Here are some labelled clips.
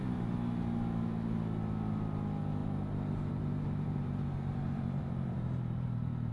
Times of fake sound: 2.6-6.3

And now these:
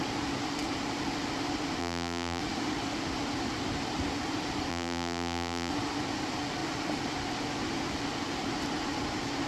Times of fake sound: 1.8-2.4; 4.7-5.7

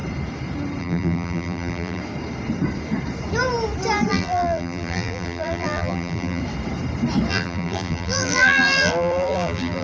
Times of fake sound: 0.8-2.0; 4.1-6.4; 7.3-9.8